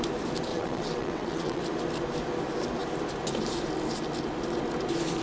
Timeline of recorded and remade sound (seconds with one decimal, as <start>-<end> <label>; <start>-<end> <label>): 0.0-0.5 recorded; 0.5-1.6 remade; 1.6-5.2 recorded